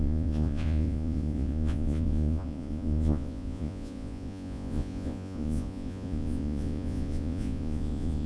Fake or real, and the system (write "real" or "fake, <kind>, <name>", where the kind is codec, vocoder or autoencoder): fake, vocoder, Vocos